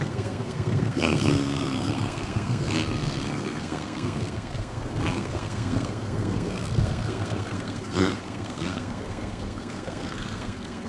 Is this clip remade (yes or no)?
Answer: yes